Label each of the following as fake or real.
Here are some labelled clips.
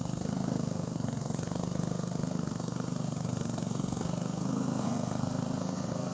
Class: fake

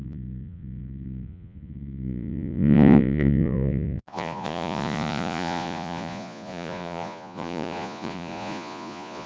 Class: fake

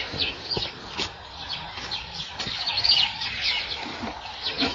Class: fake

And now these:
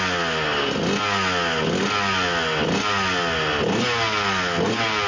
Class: real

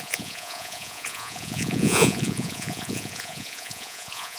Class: fake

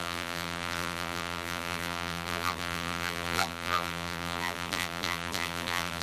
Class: fake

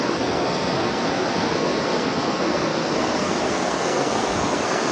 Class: fake